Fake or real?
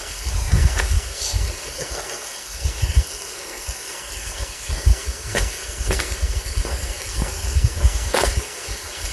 fake